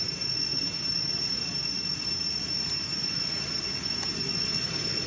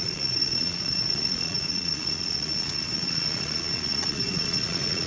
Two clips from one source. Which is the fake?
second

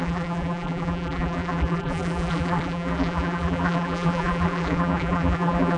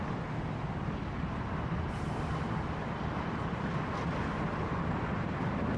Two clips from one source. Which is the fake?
first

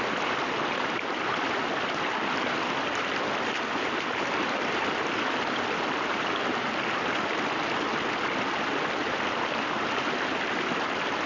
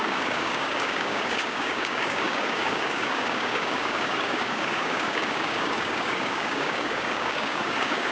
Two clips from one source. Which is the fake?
second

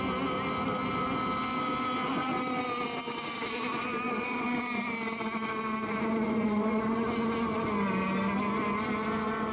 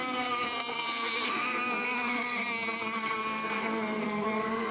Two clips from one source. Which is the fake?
second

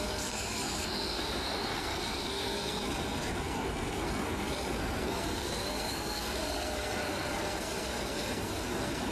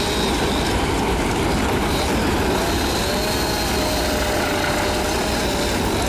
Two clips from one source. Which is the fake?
first